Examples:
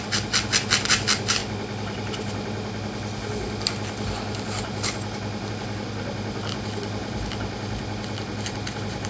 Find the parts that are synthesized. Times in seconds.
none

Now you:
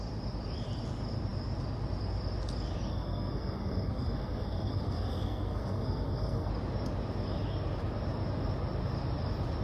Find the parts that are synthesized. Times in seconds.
2.9-6.5 (codec, SNAC)

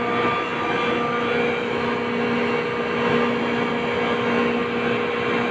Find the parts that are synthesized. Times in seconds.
none

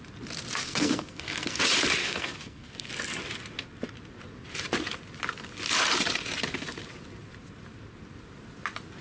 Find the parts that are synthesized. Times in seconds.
0.6-1.6 (codec, SNAC); 2.0-2.9

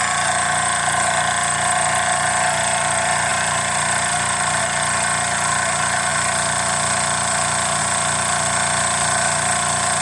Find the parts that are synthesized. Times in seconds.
3.3-4.6 (vocoder, BigVGAN v2)

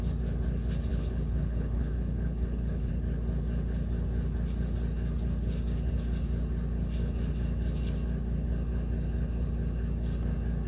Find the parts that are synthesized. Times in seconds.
0.9-2.9 (codec, HILCodec)

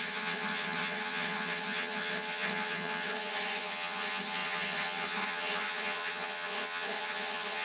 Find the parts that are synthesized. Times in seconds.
0.0-7.6 (vocoder, HiFi-GAN)

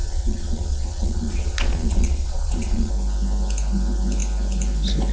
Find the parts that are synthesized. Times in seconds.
0.0-2.9 (vocoder, Vocos)